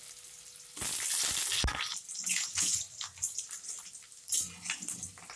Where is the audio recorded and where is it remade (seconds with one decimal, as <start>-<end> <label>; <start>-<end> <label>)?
0.0-2.3 recorded; 2.3-2.8 remade; 2.8-5.4 recorded